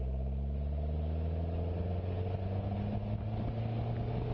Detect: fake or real real